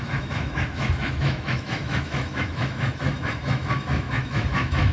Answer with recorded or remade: remade